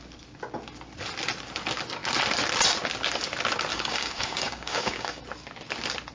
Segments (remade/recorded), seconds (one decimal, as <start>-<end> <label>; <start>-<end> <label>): 0.0-3.7 recorded; 3.7-5.2 remade; 5.2-6.1 recorded